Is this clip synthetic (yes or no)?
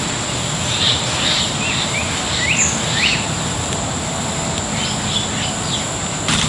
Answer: no